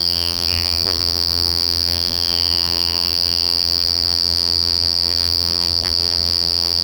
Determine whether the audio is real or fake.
fake